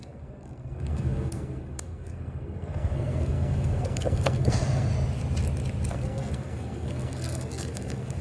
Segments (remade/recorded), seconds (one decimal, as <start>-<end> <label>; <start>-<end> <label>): 0.0-4.9 remade; 4.9-5.9 recorded; 5.9-8.2 remade